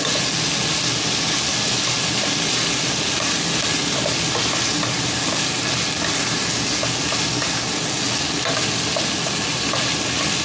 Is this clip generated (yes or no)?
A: no